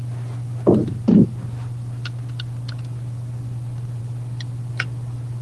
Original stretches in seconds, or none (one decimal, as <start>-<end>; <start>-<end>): 0.0-5.4